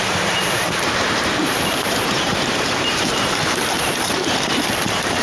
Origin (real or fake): fake